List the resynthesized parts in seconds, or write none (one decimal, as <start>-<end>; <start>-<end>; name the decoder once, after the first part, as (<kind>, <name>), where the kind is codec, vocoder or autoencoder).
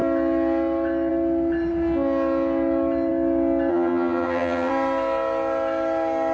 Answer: 3.7-4.7 (vocoder, HiFi-GAN)